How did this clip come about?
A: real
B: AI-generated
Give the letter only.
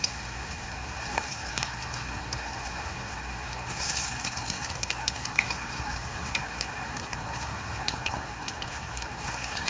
B